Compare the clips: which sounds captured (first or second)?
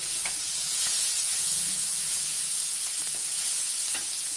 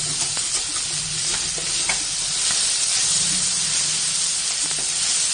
second